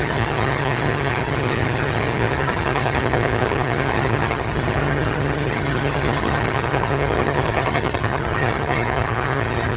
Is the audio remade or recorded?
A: remade